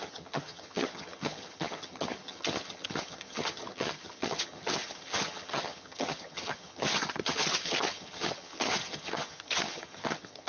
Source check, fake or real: fake